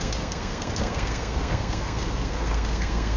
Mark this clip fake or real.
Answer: fake